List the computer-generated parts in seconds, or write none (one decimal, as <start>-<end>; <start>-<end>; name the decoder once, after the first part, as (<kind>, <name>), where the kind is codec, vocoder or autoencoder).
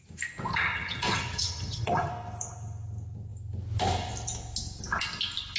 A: 0.5-2.1 (vocoder, HiFi-GAN)